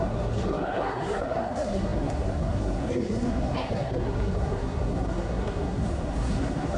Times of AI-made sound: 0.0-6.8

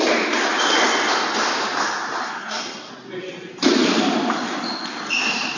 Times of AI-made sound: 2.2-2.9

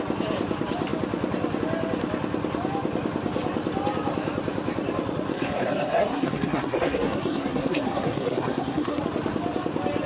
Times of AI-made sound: 5.3-9.0

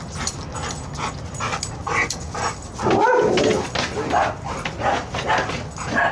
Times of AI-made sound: none